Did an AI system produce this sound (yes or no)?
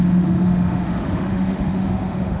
yes